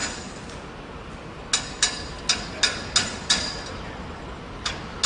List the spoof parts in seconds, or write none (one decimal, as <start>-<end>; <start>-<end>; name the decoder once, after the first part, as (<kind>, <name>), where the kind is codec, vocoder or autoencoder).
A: 3.0-3.9 (vocoder, BigVGAN v2)